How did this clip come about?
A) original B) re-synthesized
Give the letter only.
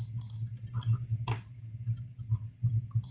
A